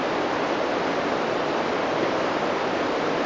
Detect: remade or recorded recorded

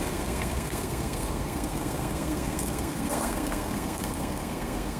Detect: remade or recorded remade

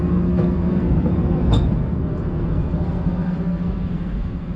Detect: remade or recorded remade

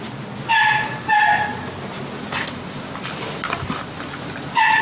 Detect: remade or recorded recorded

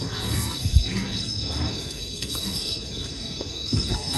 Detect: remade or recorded remade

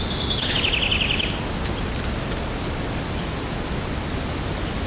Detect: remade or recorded recorded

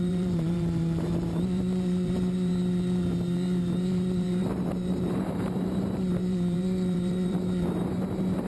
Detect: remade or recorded remade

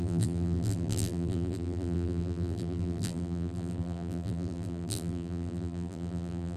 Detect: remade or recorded remade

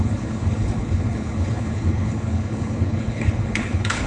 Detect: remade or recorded remade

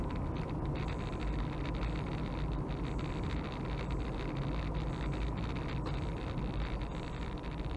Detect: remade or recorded recorded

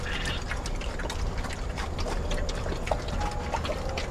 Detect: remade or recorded recorded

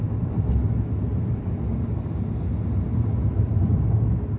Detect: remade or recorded recorded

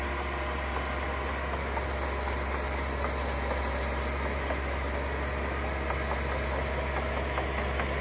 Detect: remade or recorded recorded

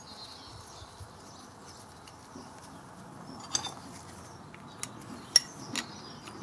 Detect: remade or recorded recorded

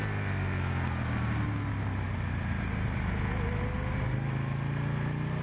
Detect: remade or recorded recorded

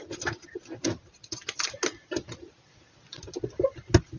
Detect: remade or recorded recorded